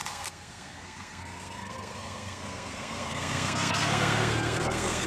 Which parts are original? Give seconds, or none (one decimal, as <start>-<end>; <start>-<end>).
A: none